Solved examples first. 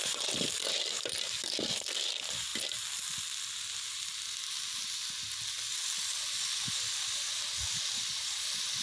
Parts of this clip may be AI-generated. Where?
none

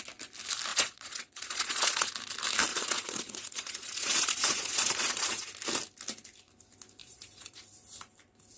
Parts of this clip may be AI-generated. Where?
0.7-2.1 (vocoder, Vocos); 2.7-5.5; 7.0-7.6